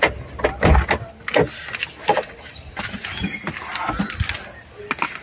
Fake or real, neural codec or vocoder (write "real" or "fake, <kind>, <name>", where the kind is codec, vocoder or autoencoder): real